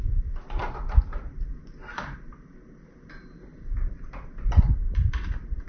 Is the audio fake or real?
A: fake